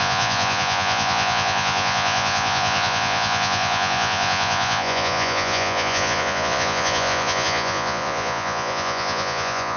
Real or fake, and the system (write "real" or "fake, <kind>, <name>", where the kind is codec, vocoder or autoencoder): fake, vocoder, Vocos